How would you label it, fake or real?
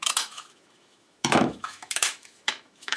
fake